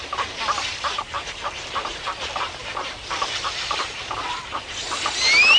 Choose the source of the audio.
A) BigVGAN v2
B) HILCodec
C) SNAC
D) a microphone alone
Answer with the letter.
D